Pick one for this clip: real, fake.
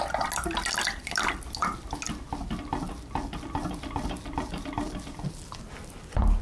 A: real